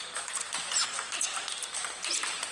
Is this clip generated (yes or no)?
no